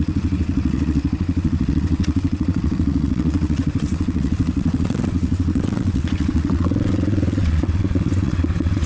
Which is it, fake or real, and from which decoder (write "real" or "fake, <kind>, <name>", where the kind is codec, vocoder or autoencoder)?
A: fake, vocoder, WaveNeXt